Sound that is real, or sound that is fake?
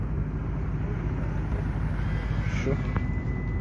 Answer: real